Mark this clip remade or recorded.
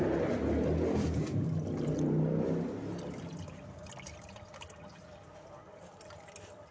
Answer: recorded